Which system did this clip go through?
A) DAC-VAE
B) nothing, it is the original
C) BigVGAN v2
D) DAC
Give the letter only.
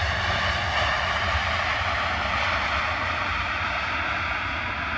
B